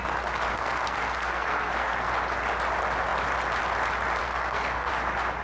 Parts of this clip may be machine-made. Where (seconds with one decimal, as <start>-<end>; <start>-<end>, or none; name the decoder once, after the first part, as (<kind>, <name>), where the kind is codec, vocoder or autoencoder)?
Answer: 0.5-2.1 (codec, SNAC); 4.2-4.9